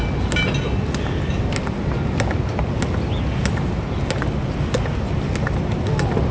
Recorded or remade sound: recorded